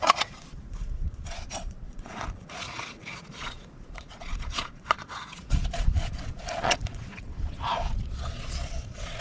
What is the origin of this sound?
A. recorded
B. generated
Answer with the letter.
B